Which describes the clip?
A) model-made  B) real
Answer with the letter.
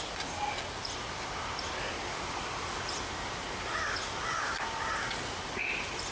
B